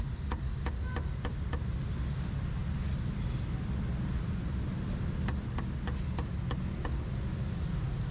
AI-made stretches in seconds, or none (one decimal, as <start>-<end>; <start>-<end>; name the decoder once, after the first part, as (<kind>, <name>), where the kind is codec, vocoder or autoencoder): none